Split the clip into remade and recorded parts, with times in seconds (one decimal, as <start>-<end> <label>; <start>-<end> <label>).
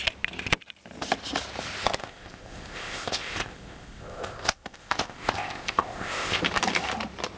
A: 0.0-2.0 recorded; 2.0-6.4 remade; 6.4-7.4 recorded